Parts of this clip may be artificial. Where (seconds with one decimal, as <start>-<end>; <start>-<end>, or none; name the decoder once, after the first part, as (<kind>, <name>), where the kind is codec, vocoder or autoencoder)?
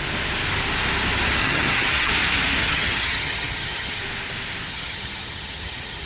1.4-2.1 (vocoder, HiFi-GAN); 2.6-4.0; 4.7-6.1